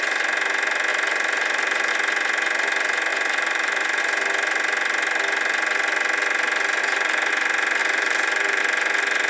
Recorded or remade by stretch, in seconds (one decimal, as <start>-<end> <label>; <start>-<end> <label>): 0.0-0.9 recorded; 0.9-1.9 remade; 1.9-3.1 recorded; 3.1-4.0 remade; 4.0-6.8 recorded; 6.8-7.3 remade; 7.3-7.8 recorded; 7.8-8.6 remade; 8.6-9.3 recorded